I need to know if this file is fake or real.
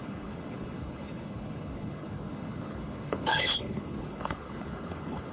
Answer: fake